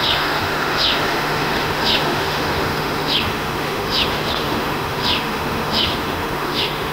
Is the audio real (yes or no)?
no